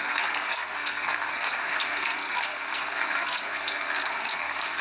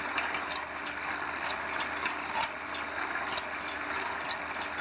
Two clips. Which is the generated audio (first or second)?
first